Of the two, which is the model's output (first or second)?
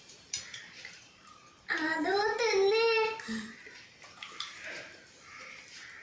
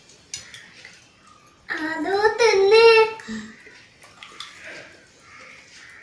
first